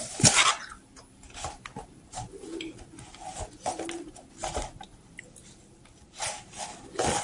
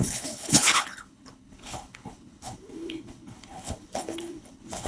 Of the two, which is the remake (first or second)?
second